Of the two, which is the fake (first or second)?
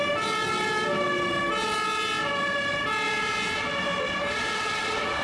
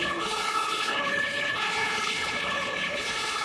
second